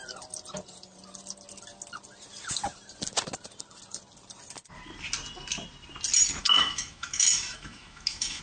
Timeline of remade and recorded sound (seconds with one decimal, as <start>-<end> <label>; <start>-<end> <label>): 0.0-6.4 recorded; 6.4-8.4 remade